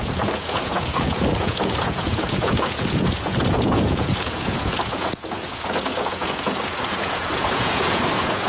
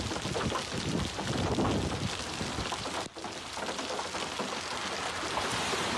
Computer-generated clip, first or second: first